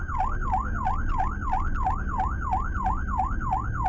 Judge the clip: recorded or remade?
recorded